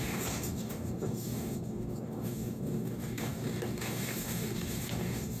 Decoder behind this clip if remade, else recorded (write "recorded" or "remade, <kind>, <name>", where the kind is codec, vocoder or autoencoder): remade, codec, DAC